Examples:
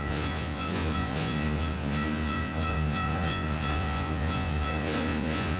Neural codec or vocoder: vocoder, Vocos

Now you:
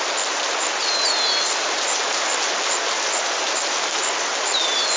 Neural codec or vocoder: none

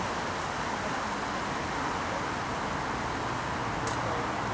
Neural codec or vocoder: none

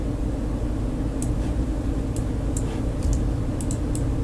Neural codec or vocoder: none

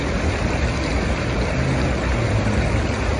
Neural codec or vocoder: none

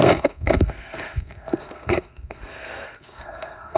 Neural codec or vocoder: codec, SNAC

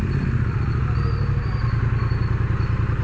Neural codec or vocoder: vocoder, BigVGAN v2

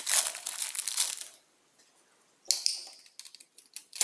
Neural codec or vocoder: none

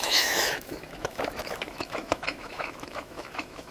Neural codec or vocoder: autoencoder, DAC-VAE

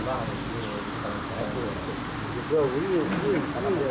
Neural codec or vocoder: none